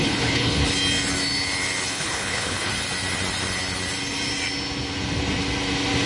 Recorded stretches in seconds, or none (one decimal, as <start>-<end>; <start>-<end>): 0.6-1.9; 2.7-6.1